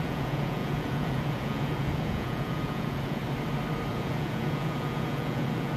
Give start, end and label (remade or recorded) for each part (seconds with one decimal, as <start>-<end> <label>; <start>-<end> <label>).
0.0-3.2 remade; 3.2-3.9 recorded; 3.9-5.8 remade